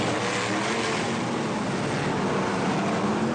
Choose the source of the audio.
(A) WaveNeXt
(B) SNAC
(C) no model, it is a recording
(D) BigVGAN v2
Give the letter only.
C